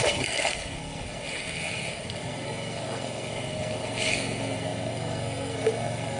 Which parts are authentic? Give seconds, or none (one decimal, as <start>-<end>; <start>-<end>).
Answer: none